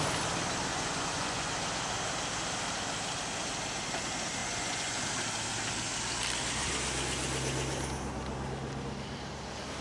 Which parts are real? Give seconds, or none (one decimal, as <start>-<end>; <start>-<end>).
0.0-0.7; 1.5-4.4; 5.0-9.8